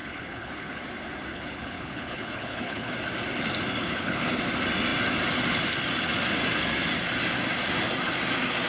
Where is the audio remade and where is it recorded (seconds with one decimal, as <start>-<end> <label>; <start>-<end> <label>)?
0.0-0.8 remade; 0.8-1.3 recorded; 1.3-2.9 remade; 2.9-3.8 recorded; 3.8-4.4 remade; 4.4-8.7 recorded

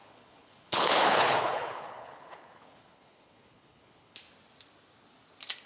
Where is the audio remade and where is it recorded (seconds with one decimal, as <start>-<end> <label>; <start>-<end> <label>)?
0.0-4.2 remade; 4.2-5.7 recorded

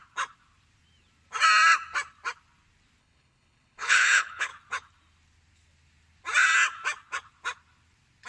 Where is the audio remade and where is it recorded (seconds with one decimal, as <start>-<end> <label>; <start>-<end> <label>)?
0.0-3.0 recorded; 3.0-4.5 remade; 4.5-8.3 recorded